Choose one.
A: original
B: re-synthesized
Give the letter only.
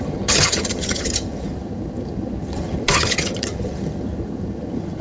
B